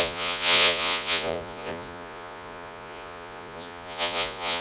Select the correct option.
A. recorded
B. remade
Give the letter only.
B